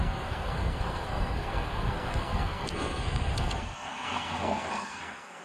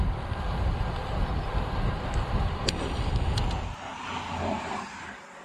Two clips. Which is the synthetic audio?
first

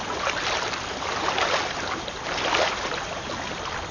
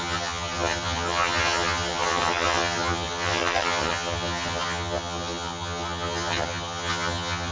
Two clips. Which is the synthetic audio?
second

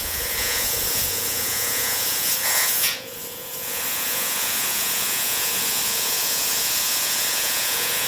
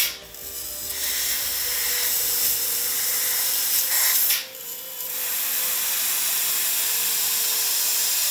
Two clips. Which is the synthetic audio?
first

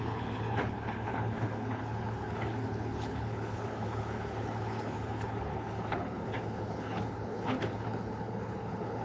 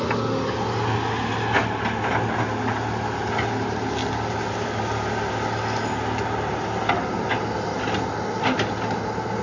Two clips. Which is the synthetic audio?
first